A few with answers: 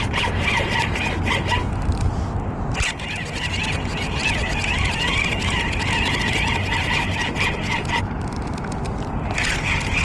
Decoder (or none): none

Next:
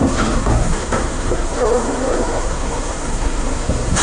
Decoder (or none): codec, SNAC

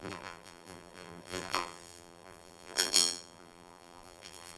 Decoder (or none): vocoder, BigVGAN v2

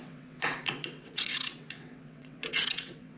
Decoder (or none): vocoder, WaveNeXt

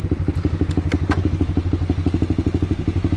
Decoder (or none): none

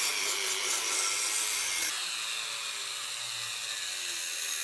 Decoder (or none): none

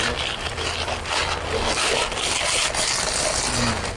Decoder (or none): none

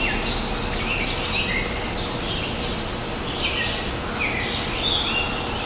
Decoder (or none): none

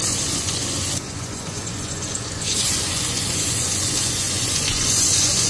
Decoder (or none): vocoder, Vocos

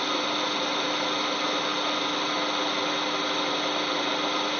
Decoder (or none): none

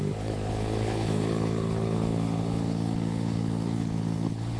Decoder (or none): codec, HILCodec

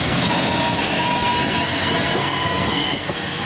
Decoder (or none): codec, SNAC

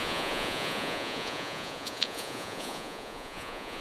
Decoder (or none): vocoder, Vocos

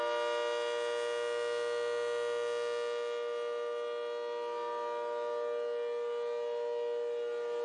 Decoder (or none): none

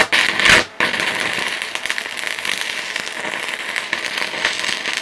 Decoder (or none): none